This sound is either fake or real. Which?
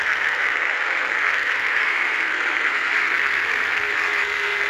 fake